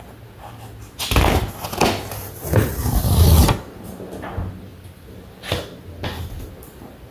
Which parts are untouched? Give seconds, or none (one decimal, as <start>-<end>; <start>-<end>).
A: 0.0-7.1